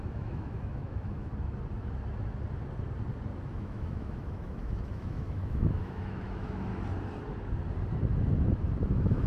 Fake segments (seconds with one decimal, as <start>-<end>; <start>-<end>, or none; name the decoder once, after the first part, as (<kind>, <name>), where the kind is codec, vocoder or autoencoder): 0.0-1.3 (autoencoder, DAC-VAE); 3.5-6.7; 8.9-9.3